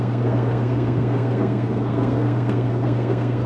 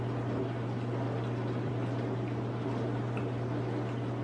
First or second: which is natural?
second